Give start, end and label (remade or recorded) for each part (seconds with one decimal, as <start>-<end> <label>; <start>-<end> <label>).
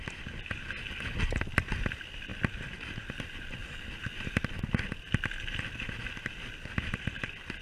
0.0-7.6 recorded